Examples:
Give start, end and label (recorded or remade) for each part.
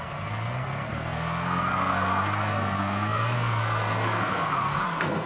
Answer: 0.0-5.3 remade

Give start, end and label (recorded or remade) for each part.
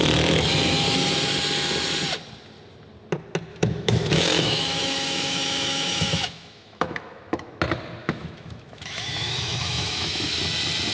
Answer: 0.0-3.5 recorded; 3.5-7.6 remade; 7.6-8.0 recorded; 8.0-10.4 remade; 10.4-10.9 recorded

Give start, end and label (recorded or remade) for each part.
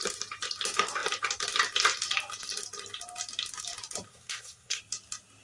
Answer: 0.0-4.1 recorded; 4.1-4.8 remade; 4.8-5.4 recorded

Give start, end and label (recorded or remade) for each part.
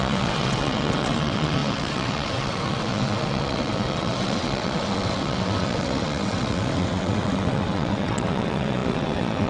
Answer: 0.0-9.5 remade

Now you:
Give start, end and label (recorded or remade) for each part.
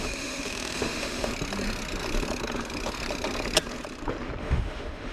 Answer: 0.0-1.3 remade; 1.3-4.4 recorded; 4.4-5.1 remade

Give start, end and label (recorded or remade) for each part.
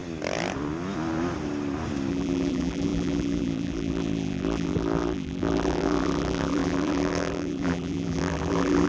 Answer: 0.0-2.1 recorded; 2.1-8.9 remade